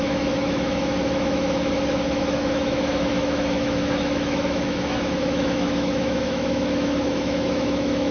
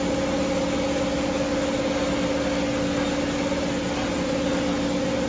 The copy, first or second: first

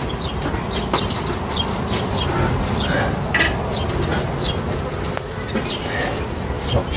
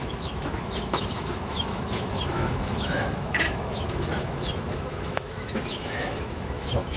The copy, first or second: second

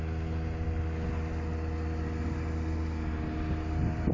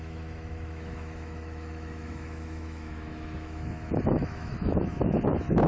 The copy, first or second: second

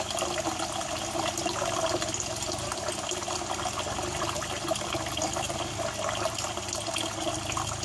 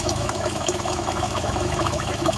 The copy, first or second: second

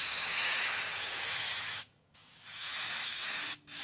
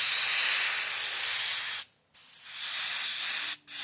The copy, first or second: first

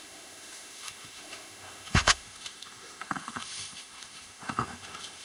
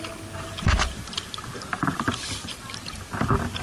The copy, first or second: first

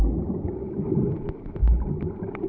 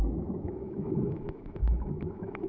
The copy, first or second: second